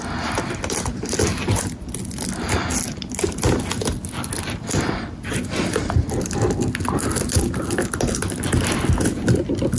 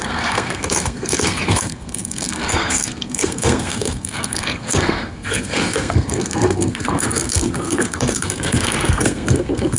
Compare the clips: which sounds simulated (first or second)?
second